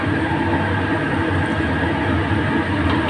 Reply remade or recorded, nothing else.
recorded